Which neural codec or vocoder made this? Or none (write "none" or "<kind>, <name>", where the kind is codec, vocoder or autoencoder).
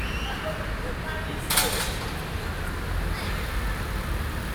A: none